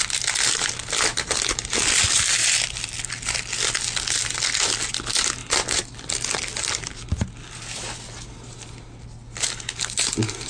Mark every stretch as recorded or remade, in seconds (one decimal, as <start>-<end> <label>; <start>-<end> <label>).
0.0-10.5 recorded